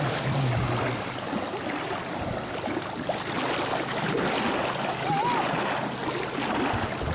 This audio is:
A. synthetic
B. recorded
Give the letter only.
B